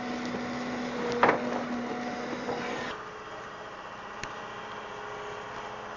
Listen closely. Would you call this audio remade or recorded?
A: recorded